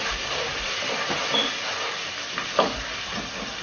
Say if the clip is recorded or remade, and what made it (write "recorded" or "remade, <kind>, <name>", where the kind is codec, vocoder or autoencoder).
remade, vocoder, BigVGAN v2